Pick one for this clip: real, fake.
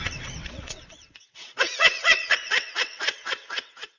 fake